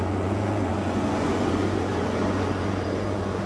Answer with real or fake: fake